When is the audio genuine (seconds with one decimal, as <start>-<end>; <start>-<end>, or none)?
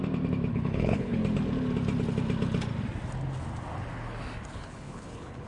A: 0.0-0.5; 1.2-4.5